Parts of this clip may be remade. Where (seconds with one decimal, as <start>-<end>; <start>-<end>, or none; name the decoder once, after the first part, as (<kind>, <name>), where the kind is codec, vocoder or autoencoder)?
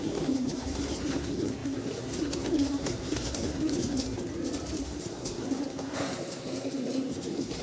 0.0-4.3 (codec, SNAC); 4.8-7.6